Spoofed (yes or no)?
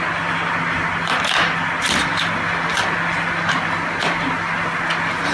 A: no